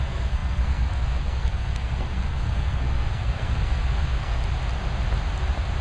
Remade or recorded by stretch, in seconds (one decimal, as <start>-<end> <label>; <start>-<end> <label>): 0.0-4.4 remade; 4.4-5.8 recorded